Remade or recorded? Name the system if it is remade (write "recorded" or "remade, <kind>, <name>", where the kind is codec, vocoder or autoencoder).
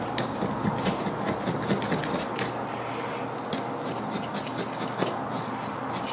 recorded